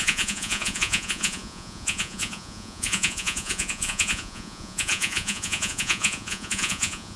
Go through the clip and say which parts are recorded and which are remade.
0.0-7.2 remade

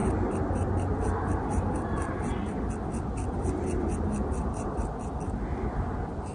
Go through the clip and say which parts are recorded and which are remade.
0.0-6.3 recorded

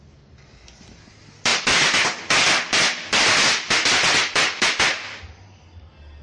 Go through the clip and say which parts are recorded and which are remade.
0.0-6.2 recorded

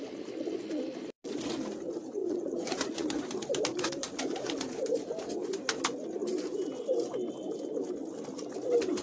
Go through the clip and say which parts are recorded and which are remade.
0.0-2.2 recorded; 2.2-3.2 remade; 3.2-9.0 recorded

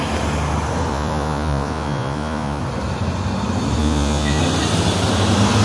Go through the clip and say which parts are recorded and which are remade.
0.0-0.9 recorded; 0.9-2.6 remade; 2.6-3.8 recorded; 3.8-4.4 remade; 4.4-5.6 recorded

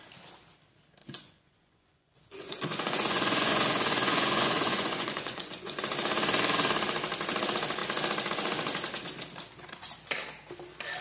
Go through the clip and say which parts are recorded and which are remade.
0.0-1.0 recorded; 1.0-5.8 remade; 5.8-11.0 recorded

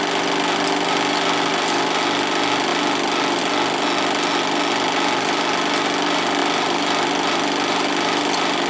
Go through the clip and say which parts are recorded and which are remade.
0.0-8.7 recorded

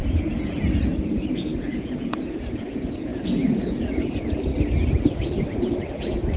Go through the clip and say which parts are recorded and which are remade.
0.0-4.5 remade; 4.5-5.2 recorded; 5.2-6.4 remade